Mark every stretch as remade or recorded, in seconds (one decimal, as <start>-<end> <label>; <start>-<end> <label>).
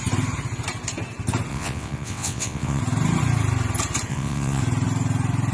0.0-1.5 recorded; 1.5-2.8 remade; 2.8-4.1 recorded; 4.1-4.6 remade; 4.6-5.5 recorded